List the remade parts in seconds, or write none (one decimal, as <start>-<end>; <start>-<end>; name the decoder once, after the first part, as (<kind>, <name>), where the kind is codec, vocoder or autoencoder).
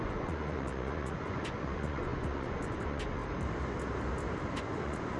0.0-3.2 (vocoder, Vocos); 4.6-5.2